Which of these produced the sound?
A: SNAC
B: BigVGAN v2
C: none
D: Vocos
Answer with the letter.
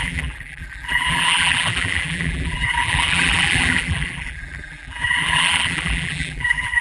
B